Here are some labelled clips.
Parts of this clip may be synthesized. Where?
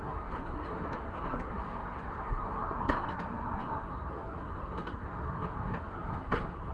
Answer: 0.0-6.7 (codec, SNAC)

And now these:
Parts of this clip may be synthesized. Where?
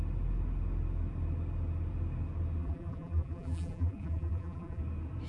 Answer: 2.6-4.8 (vocoder, BigVGAN v2)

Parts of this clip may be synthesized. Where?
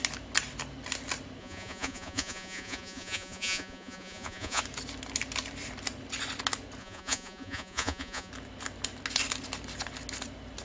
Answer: 1.4-4.6 (vocoder, Vocos); 6.8-8.3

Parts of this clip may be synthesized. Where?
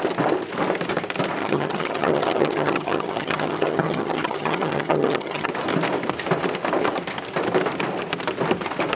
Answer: 1.4-5.5 (vocoder, HiFi-GAN)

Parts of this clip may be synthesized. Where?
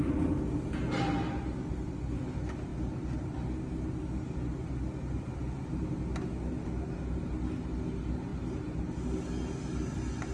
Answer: 8.3-8.8 (vocoder, BigVGAN v2)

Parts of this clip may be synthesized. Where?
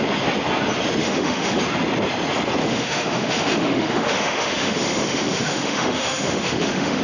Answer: 1.0-1.6 (autoencoder, DAC-VAE); 2.6-7.0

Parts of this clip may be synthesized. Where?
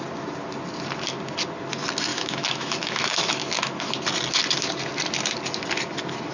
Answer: 2.1-3.9 (autoencoder, DAC-VAE)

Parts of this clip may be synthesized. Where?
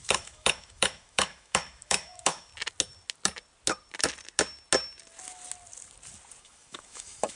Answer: 0.0-2.5 (autoencoder, DAC-VAE); 6.4-7.4